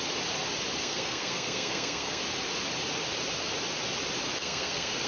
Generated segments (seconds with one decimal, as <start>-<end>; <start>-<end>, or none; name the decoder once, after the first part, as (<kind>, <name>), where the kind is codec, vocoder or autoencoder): 0.8-2.2 (codec, SNAC); 4.4-5.1

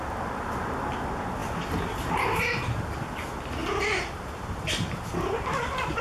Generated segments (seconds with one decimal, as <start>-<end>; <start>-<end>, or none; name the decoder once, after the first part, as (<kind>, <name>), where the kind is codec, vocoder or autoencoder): 1.4-2.1 (vocoder, BigVGAN v2); 3.6-5.0